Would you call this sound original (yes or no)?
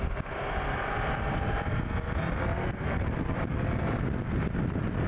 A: yes